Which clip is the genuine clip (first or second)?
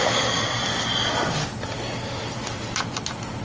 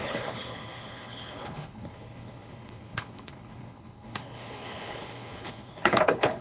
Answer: first